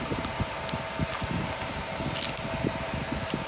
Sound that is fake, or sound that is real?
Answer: real